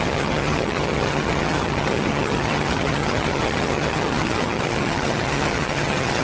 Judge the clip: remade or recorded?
remade